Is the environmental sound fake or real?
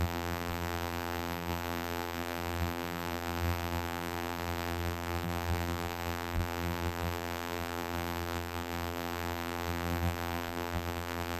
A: fake